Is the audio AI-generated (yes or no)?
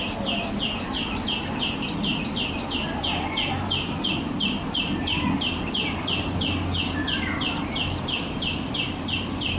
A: no